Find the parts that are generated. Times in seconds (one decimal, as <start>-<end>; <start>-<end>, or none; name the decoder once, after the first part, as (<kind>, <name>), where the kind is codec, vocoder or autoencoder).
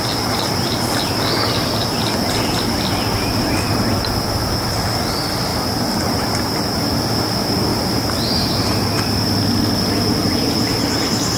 7.7-8.8 (vocoder, BigVGAN v2)